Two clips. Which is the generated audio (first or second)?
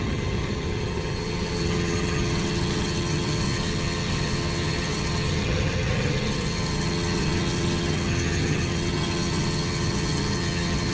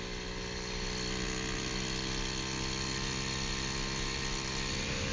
first